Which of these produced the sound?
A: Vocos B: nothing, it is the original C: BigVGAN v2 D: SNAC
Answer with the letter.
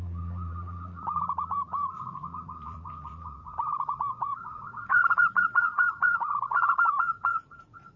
A